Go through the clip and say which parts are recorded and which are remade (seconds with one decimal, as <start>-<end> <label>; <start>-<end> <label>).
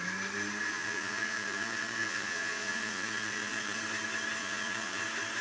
0.0-0.7 recorded; 0.7-3.8 remade; 3.8-4.4 recorded; 4.4-5.0 remade; 5.0-5.4 recorded